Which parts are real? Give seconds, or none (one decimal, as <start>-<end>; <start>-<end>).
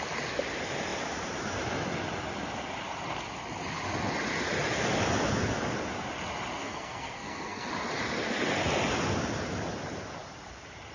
0.0-6.6; 7.7-10.9